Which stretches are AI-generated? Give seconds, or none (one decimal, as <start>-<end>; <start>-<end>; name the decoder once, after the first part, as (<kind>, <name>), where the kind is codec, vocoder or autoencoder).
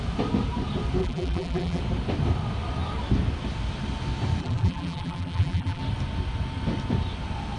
1.0-1.8 (vocoder, BigVGAN v2); 4.4-5.8